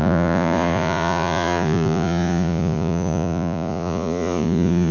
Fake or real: fake